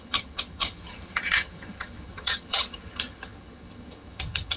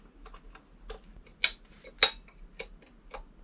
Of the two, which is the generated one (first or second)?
first